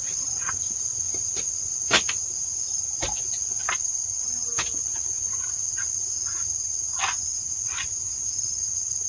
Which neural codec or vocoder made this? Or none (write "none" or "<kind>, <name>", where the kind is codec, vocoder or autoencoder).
none